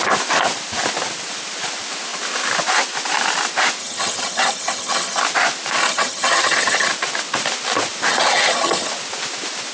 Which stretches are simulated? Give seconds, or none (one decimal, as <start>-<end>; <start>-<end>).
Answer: 3.8-5.2; 5.8-6.9; 8.1-8.9